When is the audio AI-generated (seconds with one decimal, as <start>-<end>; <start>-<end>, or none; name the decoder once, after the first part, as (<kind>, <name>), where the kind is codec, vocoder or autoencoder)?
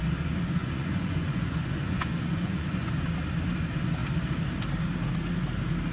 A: 0.6-2.9 (vocoder, Vocos)